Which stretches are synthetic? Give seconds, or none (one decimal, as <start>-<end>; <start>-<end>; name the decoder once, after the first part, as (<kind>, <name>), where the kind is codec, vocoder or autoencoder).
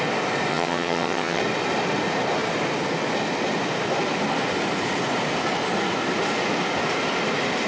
0.5-1.4 (vocoder, HiFi-GAN)